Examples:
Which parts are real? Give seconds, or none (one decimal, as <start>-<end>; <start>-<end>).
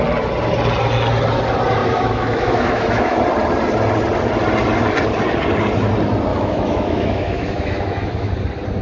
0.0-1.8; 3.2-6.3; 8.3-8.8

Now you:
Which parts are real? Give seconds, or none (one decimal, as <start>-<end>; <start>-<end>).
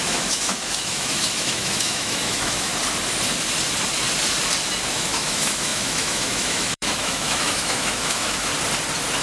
2.7-4.9; 8.5-9.2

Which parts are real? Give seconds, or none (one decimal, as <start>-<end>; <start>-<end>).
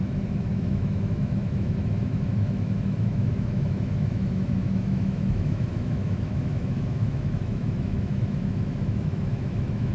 none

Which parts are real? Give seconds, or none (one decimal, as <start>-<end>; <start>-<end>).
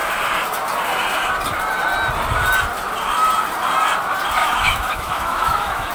0.0-4.4